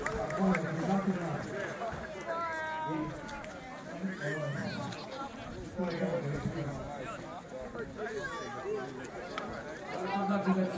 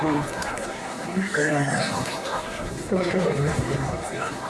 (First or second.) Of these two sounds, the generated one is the second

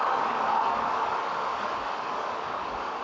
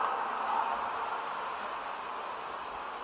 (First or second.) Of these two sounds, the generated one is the first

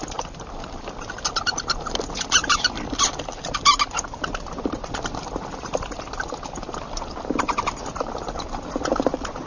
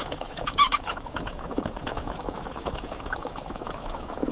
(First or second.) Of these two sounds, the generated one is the second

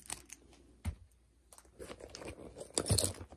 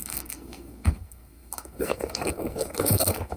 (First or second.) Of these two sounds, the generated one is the second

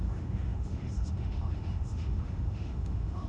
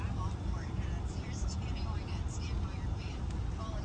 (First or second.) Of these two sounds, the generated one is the first